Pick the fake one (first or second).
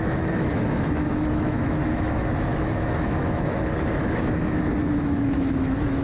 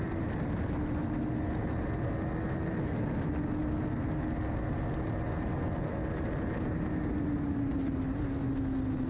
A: first